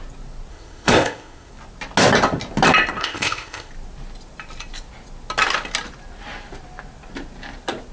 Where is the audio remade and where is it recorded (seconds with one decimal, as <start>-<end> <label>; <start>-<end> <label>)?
0.0-0.5 recorded; 0.5-1.5 remade; 1.5-3.0 recorded; 3.0-3.7 remade; 3.7-7.9 recorded